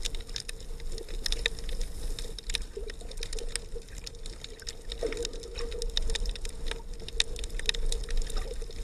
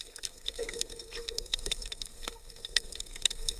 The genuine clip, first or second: first